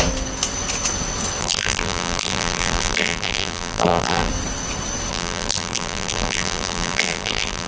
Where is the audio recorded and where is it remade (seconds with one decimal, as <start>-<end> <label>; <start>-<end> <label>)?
0.0-1.4 recorded; 1.4-4.3 remade; 4.3-5.1 recorded; 5.1-7.7 remade